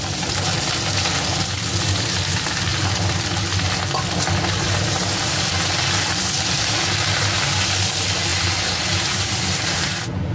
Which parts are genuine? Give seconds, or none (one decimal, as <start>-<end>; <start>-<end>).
0.0-8.3; 9.3-10.3